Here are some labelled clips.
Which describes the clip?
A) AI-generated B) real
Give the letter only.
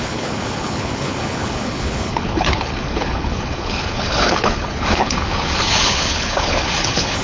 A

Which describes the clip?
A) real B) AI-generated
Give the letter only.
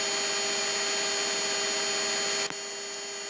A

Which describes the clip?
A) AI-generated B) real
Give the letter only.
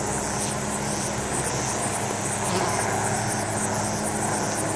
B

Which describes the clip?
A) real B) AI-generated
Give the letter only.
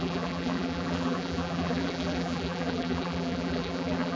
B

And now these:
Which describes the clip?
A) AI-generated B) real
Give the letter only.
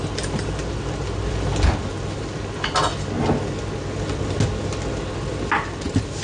B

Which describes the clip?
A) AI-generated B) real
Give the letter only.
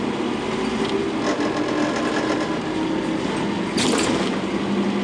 B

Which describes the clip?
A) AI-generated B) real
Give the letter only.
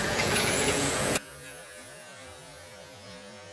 A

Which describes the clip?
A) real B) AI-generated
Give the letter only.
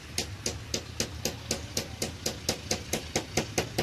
A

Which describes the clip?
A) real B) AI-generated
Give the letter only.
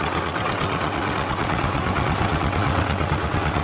B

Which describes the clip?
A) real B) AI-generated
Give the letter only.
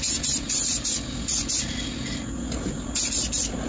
A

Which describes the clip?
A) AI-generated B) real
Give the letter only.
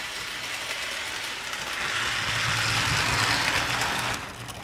B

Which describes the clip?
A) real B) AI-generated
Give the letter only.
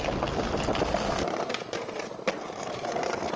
A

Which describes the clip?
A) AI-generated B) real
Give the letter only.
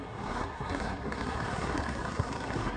A